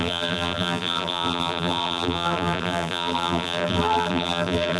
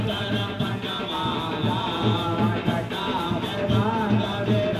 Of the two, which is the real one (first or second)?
second